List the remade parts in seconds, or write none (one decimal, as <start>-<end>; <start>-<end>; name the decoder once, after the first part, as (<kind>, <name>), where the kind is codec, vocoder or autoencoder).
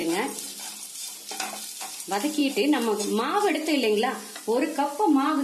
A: none